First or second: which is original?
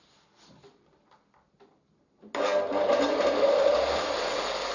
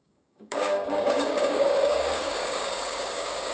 first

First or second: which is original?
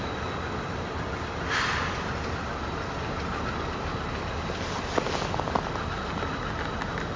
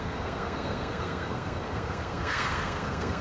first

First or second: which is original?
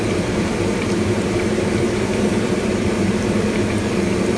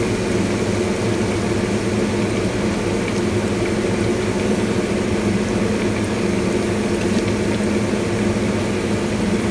second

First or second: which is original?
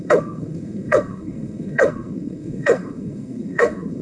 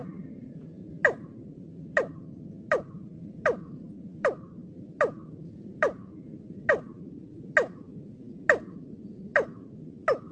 second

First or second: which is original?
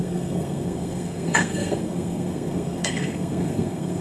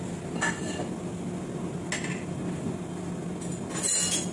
second